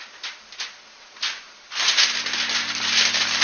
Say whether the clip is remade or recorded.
recorded